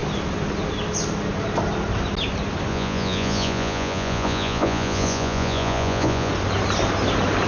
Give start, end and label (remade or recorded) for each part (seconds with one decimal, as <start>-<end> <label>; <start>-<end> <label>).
0.0-2.7 recorded; 2.7-6.3 remade; 6.3-7.5 recorded